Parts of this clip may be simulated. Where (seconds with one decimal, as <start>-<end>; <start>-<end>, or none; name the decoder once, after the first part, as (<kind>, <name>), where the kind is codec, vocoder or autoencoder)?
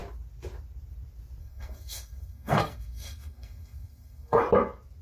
1.4-4.4 (codec, SNAC)